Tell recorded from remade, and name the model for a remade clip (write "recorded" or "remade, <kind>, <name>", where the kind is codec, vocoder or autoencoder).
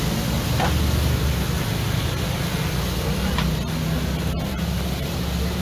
recorded